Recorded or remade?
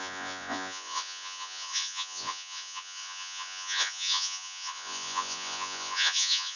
remade